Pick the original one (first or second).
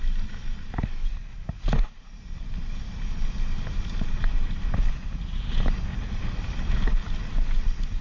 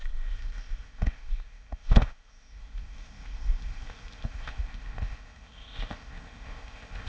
first